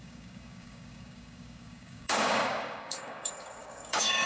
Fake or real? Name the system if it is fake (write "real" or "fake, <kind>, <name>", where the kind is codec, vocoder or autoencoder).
fake, codec, DAC